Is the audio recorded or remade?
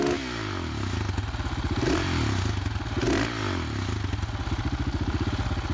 recorded